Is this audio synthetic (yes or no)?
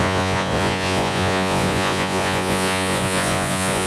yes